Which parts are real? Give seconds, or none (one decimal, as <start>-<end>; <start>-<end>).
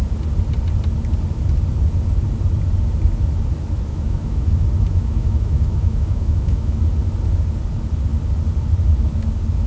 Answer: 0.0-3.9; 4.5-4.9; 6.8-9.7